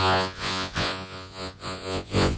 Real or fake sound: fake